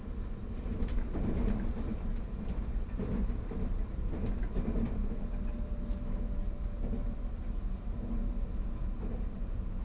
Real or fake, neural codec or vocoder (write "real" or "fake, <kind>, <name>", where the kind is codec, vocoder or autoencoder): real